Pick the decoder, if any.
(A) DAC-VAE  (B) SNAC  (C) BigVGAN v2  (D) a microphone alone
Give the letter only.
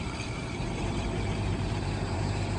C